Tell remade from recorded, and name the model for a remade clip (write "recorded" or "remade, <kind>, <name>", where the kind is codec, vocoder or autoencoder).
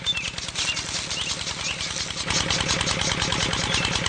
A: recorded